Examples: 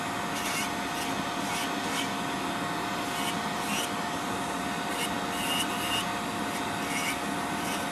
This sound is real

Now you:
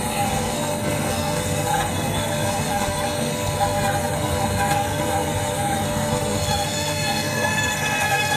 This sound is fake